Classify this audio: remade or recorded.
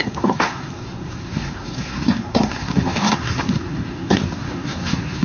remade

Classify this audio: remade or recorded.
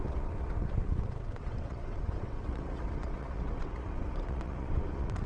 remade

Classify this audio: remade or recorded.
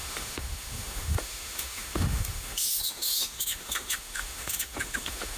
remade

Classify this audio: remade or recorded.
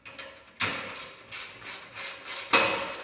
recorded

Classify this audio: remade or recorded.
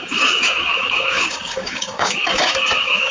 remade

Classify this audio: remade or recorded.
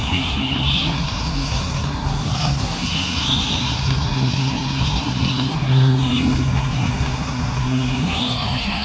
remade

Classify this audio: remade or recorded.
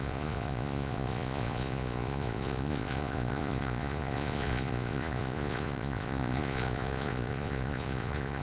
remade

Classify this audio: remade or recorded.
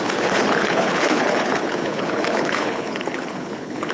remade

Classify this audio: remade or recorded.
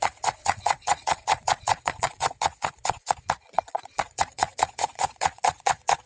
remade